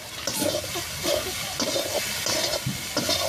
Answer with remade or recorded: recorded